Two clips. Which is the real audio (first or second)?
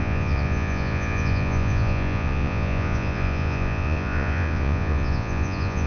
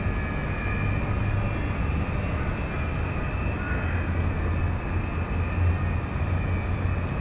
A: second